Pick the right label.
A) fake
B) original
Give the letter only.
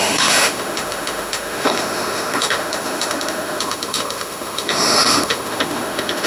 A